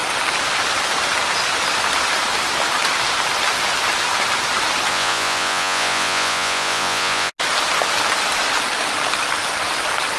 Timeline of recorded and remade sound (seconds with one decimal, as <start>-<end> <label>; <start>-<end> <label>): 0.0-4.9 recorded; 4.9-7.3 remade; 7.3-10.2 recorded